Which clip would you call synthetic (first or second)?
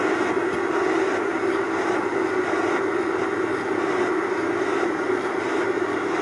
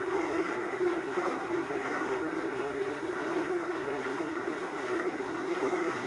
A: second